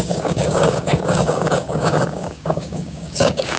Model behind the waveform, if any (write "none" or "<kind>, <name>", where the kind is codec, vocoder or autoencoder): codec, DAC